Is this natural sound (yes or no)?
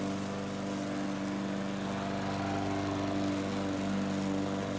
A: yes